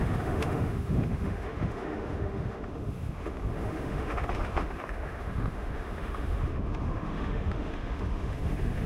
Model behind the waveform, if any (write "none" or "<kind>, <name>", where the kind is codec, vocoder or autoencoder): autoencoder, DAC-VAE